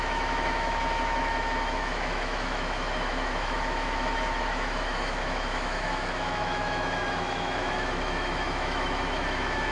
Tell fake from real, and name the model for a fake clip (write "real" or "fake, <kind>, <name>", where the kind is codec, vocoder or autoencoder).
fake, autoencoder, DAC-VAE